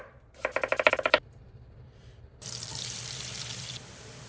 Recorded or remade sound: remade